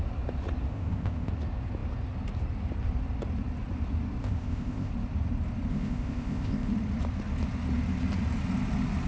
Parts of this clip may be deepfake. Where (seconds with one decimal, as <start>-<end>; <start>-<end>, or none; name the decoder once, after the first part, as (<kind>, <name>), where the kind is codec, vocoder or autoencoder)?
0.7-1.3 (codec, ZipCodec); 4.2-4.9; 5.7-6.7

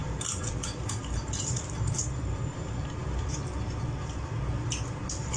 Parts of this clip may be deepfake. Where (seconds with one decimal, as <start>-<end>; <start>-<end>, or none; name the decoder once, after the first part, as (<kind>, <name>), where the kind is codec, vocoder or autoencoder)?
0.0-2.0 (vocoder, BigVGAN v2)

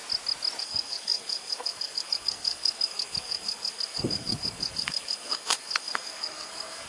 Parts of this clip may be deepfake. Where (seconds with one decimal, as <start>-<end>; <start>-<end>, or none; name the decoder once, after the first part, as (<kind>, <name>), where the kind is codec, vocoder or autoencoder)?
0.6-6.9 (codec, SNAC)